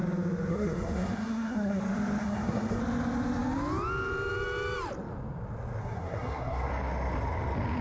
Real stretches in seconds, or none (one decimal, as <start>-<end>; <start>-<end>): 0.0-0.5; 1.8-2.2; 2.8-5.8; 6.7-7.8